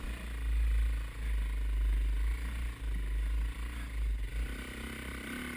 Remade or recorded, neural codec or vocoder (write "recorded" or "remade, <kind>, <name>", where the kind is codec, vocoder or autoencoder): recorded